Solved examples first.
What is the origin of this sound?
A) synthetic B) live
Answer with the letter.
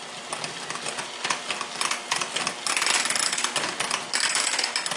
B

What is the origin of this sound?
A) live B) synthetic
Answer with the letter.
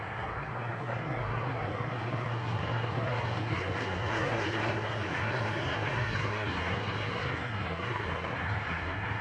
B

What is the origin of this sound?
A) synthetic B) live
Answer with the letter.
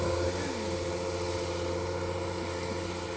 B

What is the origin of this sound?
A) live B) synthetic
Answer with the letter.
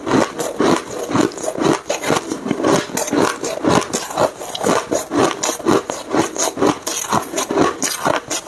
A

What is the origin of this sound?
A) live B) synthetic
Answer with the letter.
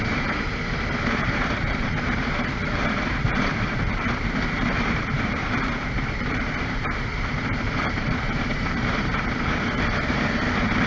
B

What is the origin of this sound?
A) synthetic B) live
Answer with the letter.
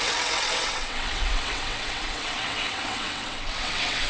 A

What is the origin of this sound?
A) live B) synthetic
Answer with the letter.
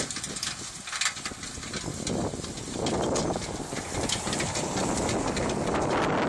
A